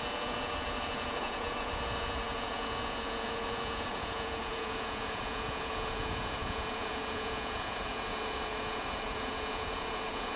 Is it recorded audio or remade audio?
remade